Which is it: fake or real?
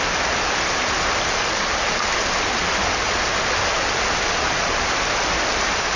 real